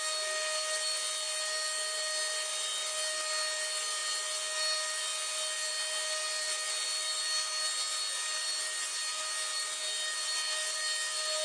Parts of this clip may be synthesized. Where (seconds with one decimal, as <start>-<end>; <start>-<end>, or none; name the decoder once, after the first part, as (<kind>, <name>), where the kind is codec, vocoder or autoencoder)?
none